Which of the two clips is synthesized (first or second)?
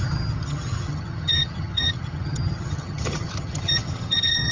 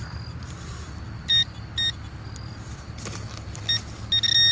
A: first